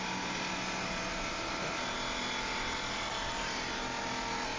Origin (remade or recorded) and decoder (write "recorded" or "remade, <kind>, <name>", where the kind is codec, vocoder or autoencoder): recorded